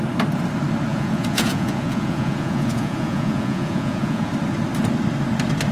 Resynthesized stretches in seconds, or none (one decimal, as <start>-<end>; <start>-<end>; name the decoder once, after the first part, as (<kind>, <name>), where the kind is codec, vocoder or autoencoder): 0.9-4.3 (vocoder, Vocos)